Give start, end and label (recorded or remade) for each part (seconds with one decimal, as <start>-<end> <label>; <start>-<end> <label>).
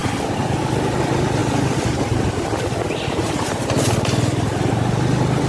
0.0-0.6 remade; 0.6-1.4 recorded; 1.4-4.7 remade; 4.7-5.5 recorded